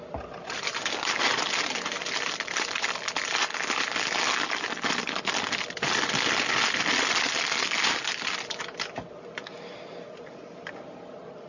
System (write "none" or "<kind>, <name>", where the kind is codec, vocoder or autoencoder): none